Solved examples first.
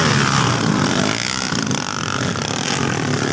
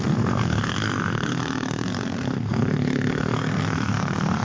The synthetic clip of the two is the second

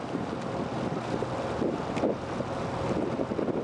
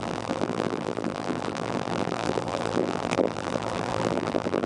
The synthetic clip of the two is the second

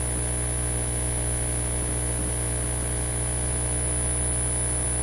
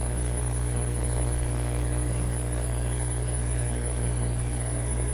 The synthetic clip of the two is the second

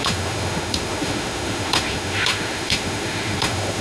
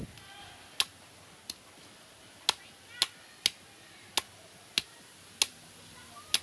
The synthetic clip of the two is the first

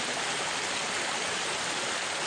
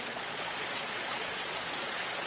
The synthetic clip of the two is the second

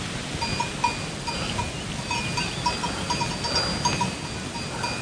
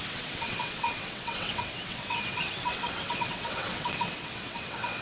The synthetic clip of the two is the second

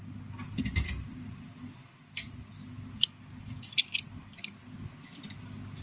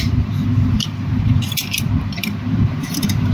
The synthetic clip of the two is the second